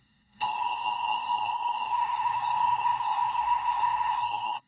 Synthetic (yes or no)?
yes